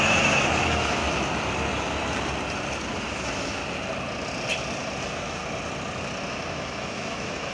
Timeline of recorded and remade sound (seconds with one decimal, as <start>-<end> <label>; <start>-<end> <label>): 0.0-1.0 remade; 1.0-2.9 recorded; 2.9-3.6 remade; 3.6-5.0 recorded; 5.0-5.4 remade; 5.4-6.3 recorded; 6.3-7.5 remade